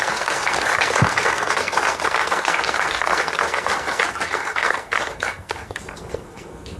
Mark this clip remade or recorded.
remade